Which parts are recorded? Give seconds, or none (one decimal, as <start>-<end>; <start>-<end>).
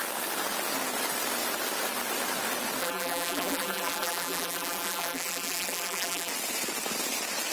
0.0-2.8; 6.3-7.5